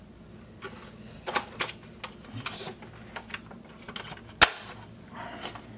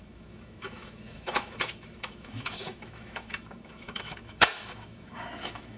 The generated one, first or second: second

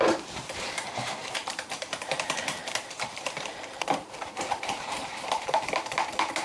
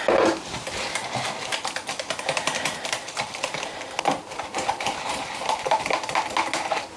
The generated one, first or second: first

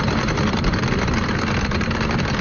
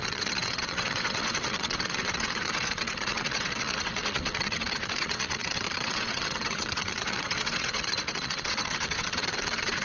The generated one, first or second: second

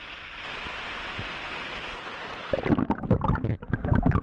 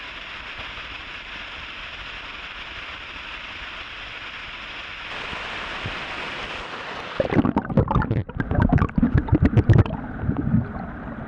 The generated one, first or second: second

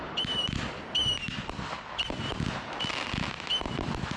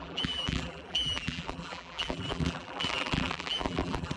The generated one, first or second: second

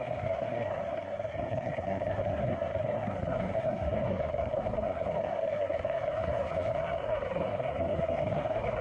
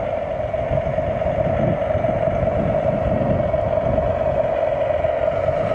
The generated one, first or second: first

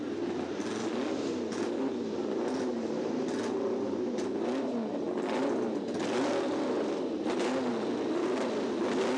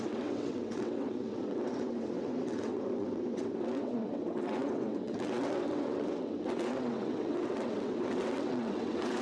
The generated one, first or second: second